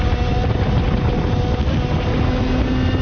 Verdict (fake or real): real